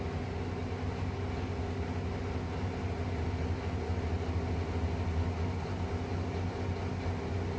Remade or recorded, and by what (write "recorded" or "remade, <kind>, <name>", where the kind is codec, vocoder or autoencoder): recorded